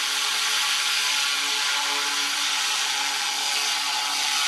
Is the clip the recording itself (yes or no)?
yes